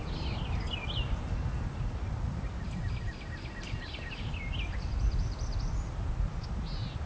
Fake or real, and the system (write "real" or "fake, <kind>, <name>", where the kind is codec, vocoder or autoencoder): real